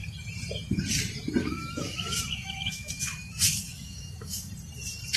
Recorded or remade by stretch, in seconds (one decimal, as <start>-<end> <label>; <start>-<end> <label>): 0.0-1.4 recorded; 1.4-4.5 remade; 4.5-5.2 recorded